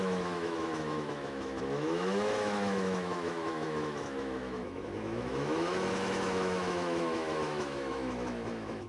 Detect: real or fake fake